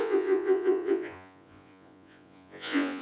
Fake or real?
fake